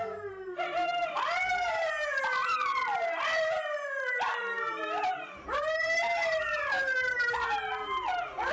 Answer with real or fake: fake